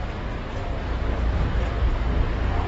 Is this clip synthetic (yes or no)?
no